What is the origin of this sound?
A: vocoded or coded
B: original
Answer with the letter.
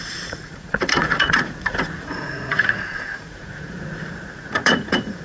A